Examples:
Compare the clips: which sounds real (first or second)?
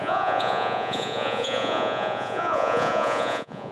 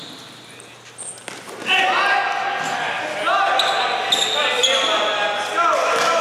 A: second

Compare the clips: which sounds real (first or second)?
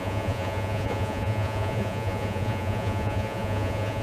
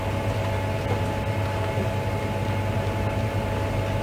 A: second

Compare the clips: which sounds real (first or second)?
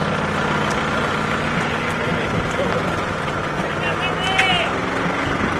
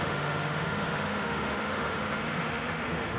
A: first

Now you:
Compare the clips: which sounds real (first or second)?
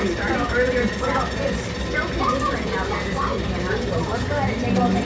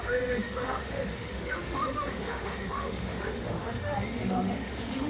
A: first